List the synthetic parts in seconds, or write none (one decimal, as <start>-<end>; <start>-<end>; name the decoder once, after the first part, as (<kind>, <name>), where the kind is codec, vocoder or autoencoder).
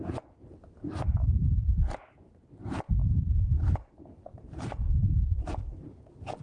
0.8-2.0 (vocoder, BigVGAN v2); 2.6-3.7; 4.3-5.9